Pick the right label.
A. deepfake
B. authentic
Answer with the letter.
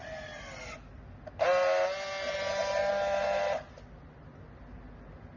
B